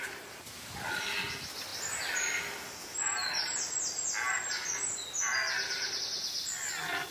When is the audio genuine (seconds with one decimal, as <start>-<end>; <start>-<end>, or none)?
0.0-7.1